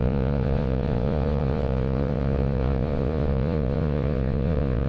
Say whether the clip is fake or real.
fake